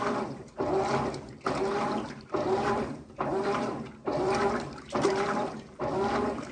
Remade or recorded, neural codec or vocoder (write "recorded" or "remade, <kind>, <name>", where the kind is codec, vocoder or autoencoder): remade, vocoder, BigVGAN v2